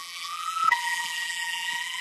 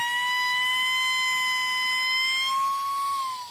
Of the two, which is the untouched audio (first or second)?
second